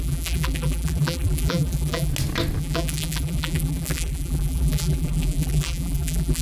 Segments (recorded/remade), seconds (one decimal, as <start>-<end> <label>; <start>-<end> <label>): 0.0-2.1 remade; 2.1-2.6 recorded; 2.6-6.4 remade